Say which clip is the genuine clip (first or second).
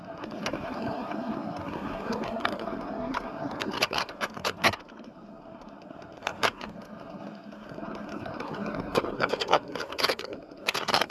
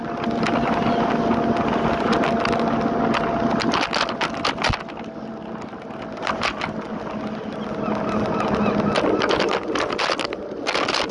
second